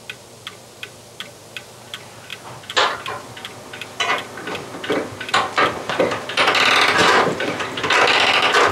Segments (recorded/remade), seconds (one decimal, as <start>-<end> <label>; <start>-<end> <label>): 0.0-7.0 recorded; 7.0-7.8 remade; 7.8-8.7 recorded